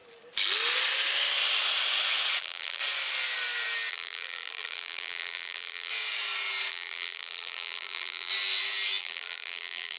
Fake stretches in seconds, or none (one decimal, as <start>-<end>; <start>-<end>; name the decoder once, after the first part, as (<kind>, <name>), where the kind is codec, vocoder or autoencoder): 2.4-2.8 (vocoder, BigVGAN v2); 3.9-5.9; 6.7-8.3; 9.0-10.0